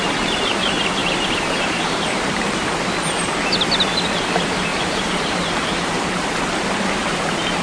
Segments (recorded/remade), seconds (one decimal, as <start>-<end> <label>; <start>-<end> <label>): 0.0-1.0 recorded; 1.0-2.7 remade; 2.7-4.7 recorded; 4.7-6.3 remade; 6.3-7.6 recorded